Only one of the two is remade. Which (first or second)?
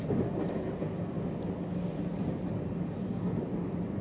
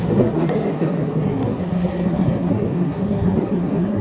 second